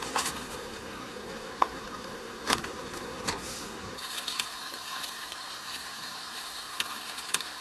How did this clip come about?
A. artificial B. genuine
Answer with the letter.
A